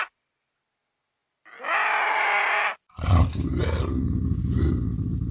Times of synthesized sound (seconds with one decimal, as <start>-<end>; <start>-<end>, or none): none